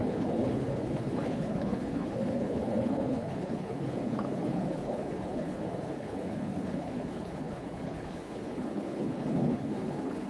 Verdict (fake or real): fake